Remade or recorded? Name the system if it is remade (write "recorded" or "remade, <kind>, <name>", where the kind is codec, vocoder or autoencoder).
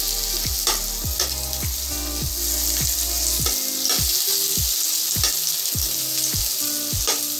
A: recorded